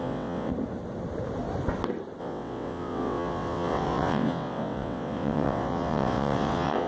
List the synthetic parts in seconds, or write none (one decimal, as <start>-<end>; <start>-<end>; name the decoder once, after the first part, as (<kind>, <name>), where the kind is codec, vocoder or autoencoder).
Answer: 0.0-0.5 (vocoder, WaveNeXt); 2.2-6.9